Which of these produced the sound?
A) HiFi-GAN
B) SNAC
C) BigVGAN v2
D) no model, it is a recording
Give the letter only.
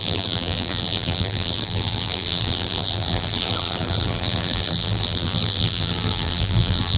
C